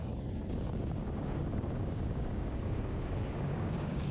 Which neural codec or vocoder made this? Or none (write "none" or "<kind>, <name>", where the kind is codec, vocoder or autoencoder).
codec, DAC